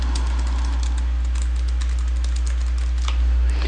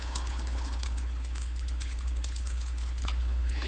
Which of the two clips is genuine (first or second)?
first